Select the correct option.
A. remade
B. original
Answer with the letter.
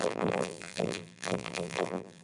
A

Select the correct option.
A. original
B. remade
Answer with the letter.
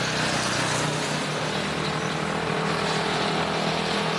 A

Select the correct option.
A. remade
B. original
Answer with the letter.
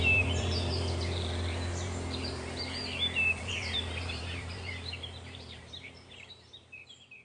A